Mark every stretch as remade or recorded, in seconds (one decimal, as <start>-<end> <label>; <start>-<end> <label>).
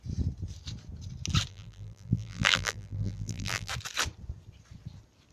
0.0-1.5 recorded; 1.5-3.7 remade; 3.7-5.3 recorded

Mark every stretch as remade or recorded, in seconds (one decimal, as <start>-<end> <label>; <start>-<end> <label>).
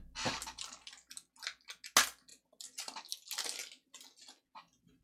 0.0-5.0 recorded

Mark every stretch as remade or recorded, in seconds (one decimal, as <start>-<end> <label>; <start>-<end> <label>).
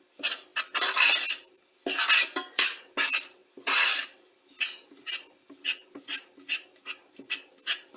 0.0-0.5 recorded; 0.5-2.6 remade; 2.6-3.4 recorded; 3.4-4.0 remade; 4.0-7.0 recorded; 7.0-8.0 remade